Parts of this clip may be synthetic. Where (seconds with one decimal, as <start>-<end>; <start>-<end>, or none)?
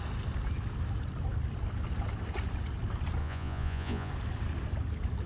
3.2-4.1